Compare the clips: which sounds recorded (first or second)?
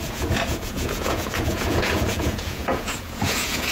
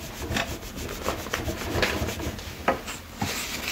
second